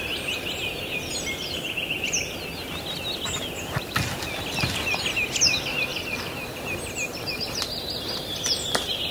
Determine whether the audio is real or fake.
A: real